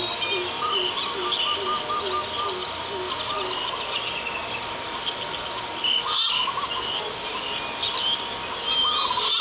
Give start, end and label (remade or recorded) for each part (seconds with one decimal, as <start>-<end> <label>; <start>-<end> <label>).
0.0-9.4 recorded

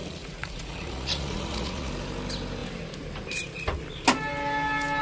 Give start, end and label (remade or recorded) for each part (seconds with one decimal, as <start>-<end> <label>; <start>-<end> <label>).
0.0-1.9 remade; 1.9-5.0 recorded

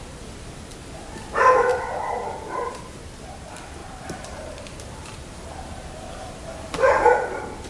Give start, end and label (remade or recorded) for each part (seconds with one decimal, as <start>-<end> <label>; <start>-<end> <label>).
0.0-1.7 recorded; 1.7-2.8 remade; 2.8-3.8 recorded; 3.8-5.5 remade; 5.5-7.7 recorded

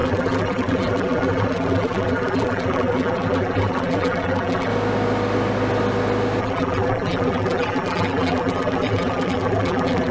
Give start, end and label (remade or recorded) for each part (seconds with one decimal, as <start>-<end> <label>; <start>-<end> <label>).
0.0-4.7 remade; 4.7-6.4 recorded; 6.4-10.1 remade

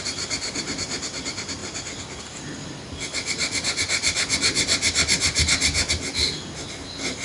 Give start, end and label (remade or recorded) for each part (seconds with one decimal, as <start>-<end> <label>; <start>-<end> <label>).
0.0-7.2 recorded

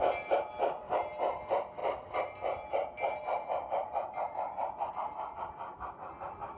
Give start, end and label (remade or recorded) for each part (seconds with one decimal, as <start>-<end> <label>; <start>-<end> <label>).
0.0-6.6 recorded

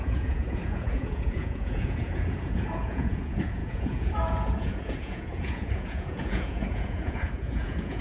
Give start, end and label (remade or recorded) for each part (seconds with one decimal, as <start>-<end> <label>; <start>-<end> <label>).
0.0-8.0 remade

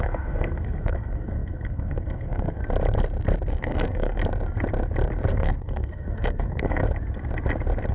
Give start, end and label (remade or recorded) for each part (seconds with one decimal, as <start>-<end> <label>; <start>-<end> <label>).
0.0-2.6 remade; 2.6-3.5 recorded; 3.5-4.2 remade; 4.2-5.3 recorded; 5.3-6.8 remade; 6.8-7.9 recorded